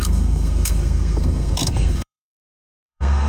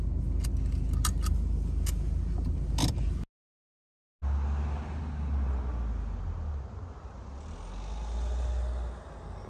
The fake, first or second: first